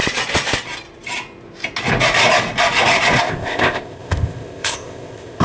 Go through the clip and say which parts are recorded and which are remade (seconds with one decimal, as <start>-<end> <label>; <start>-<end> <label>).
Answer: 0.0-3.2 recorded; 3.2-5.4 remade